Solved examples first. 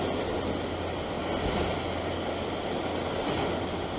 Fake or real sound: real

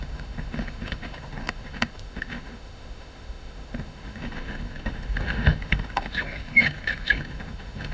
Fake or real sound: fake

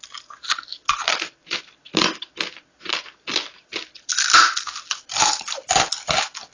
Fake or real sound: real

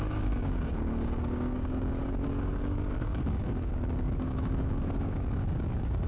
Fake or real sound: fake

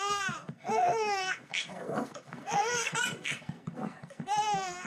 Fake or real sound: fake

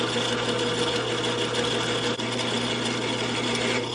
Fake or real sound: real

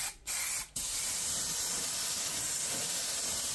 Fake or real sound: real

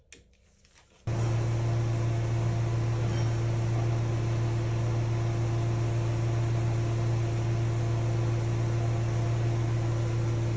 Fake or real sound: real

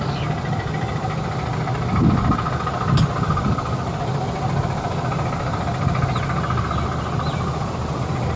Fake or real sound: real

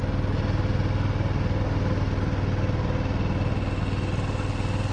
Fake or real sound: real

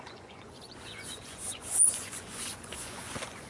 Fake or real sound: fake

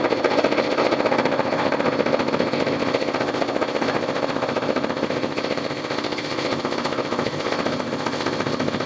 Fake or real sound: fake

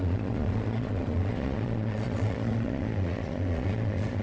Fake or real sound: fake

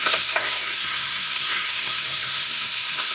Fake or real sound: fake